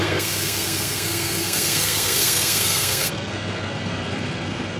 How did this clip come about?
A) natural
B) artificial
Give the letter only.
B